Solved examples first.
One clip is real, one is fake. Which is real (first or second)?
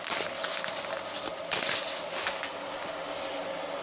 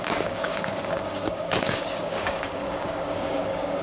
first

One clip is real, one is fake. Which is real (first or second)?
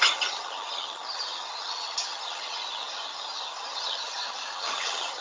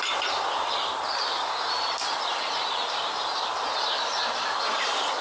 second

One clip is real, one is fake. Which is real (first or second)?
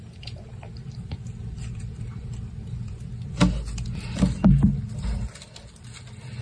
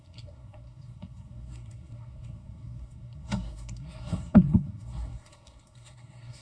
first